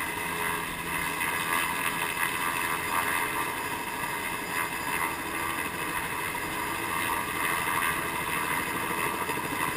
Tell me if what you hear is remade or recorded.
recorded